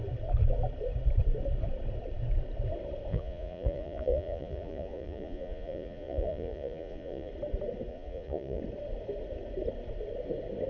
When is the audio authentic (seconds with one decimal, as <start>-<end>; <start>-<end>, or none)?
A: 0.0-3.1; 7.3-7.9; 8.6-10.7